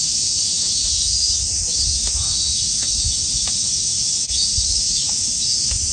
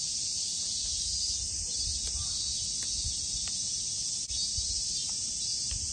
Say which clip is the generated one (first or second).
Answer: first